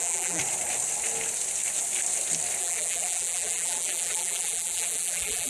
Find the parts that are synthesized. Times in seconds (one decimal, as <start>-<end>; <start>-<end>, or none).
0.0-0.4; 2.6-5.5